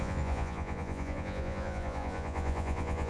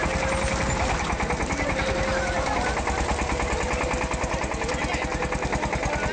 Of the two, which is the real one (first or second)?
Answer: second